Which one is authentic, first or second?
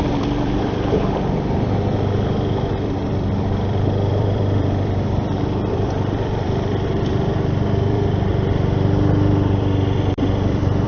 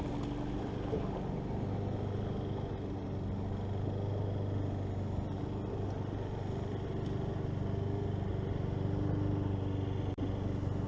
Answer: second